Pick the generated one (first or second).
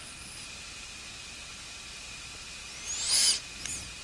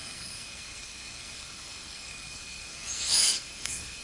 second